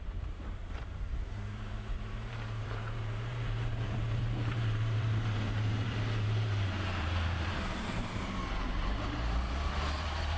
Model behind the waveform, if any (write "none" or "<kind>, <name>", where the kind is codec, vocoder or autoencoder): vocoder, BigVGAN v2